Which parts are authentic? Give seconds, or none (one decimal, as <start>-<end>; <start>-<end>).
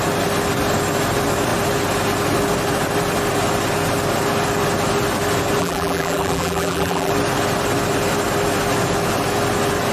0.0-5.6; 7.1-9.9